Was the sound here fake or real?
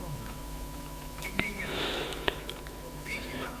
fake